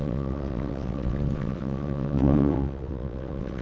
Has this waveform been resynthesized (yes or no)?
yes